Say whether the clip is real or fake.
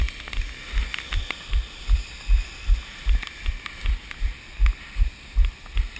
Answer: real